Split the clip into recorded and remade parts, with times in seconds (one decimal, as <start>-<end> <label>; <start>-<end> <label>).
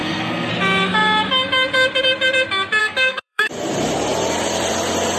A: 0.0-0.5 remade; 0.5-2.8 recorded; 2.8-3.5 remade; 3.5-5.2 recorded